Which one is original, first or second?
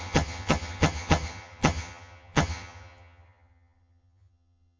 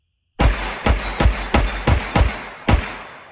second